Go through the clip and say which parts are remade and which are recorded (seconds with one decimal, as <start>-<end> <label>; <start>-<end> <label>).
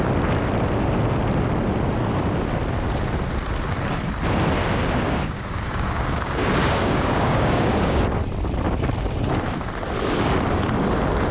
0.0-4.6 recorded; 4.6-8.0 remade; 8.0-11.3 recorded